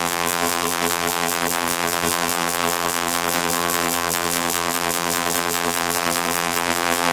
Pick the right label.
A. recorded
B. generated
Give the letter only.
B